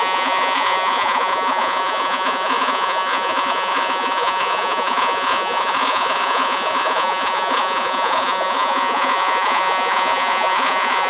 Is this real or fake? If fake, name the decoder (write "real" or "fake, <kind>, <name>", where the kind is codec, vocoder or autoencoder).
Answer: fake, vocoder, Vocos